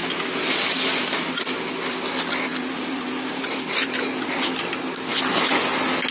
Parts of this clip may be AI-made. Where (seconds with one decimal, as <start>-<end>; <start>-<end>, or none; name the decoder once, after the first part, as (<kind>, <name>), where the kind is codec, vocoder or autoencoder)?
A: 0.0-1.2 (vocoder, BigVGAN v2); 2.5-4.2